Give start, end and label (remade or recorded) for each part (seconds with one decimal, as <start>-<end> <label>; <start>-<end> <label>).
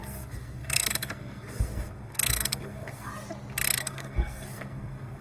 0.0-3.1 remade; 3.1-3.8 recorded; 3.8-5.2 remade